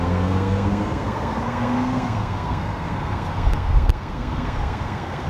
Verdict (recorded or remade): remade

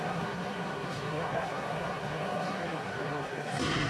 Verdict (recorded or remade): remade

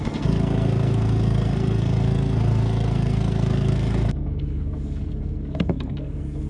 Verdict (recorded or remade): remade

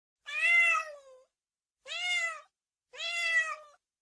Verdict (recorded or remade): recorded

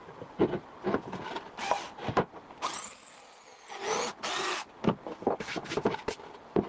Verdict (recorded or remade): recorded